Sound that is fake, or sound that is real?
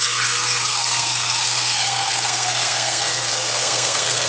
fake